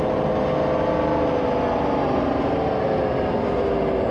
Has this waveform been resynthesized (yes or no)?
no